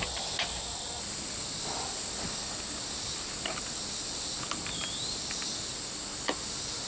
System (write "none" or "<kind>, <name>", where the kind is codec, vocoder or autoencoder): none